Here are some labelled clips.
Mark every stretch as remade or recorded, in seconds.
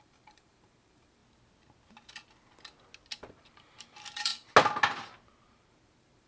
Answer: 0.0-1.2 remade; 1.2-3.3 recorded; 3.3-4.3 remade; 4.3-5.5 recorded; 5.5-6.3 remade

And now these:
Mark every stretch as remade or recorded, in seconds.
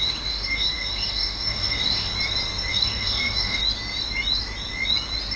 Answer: 0.0-2.1 remade; 2.1-2.7 recorded; 2.7-3.6 remade; 3.6-5.4 recorded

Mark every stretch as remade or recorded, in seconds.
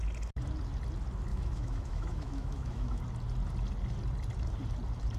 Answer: 0.0-1.3 recorded; 1.3-3.0 remade; 3.0-5.2 recorded